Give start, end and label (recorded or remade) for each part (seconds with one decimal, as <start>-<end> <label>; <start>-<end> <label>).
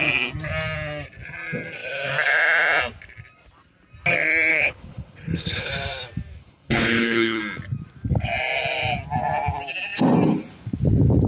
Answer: 0.0-4.5 recorded; 4.5-5.7 remade; 5.7-6.4 recorded; 6.4-7.4 remade; 7.4-11.3 recorded